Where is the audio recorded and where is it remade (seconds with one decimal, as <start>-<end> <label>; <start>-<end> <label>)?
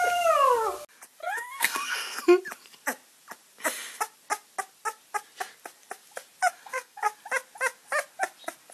0.0-1.2 recorded; 1.2-2.2 remade; 2.2-6.6 recorded; 6.6-7.1 remade; 7.1-8.7 recorded